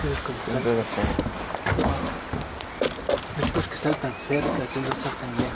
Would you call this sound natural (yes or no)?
yes